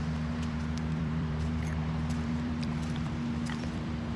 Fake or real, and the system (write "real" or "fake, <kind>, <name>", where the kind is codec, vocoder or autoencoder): fake, vocoder, BigVGAN v2